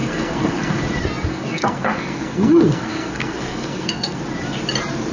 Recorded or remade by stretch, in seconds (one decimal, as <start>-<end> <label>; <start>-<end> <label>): 0.0-0.8 remade; 0.8-1.3 recorded; 1.3-4.2 remade; 4.2-5.1 recorded